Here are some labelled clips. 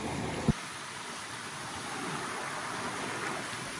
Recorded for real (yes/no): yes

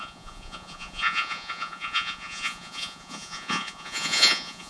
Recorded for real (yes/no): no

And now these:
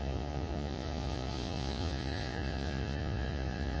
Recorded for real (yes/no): no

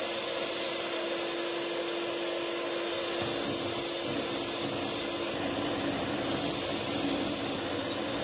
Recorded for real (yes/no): yes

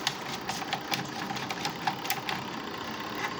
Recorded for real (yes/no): yes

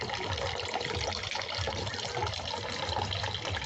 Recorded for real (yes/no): yes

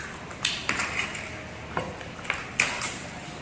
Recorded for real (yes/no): yes